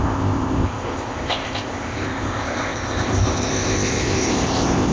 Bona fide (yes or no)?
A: no